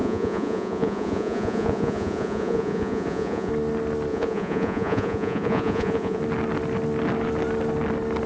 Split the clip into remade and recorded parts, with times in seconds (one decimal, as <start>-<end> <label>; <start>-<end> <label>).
0.0-3.5 remade; 3.5-4.1 recorded; 4.1-6.2 remade; 6.2-8.3 recorded